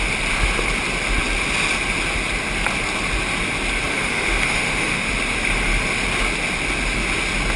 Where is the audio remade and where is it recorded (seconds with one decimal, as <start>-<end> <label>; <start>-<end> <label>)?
0.0-3.9 recorded; 3.9-5.1 remade; 5.1-7.6 recorded